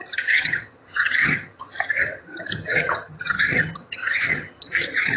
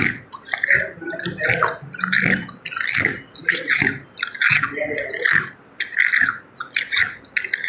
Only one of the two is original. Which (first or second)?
second